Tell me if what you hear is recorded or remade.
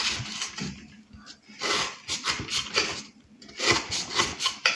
recorded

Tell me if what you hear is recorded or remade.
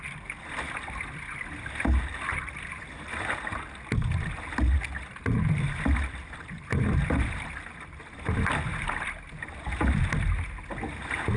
recorded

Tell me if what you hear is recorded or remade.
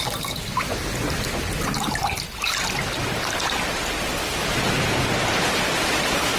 recorded